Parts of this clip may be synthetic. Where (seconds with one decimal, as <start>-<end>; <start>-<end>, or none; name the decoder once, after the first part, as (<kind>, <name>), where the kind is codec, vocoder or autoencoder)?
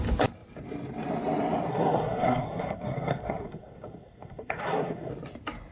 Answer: 1.7-5.1 (codec, SNAC)